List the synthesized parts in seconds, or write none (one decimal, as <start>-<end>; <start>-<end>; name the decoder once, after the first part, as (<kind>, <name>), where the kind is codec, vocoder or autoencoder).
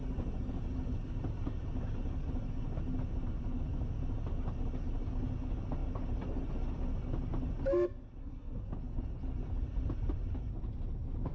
8.2-8.7 (codec, SNAC)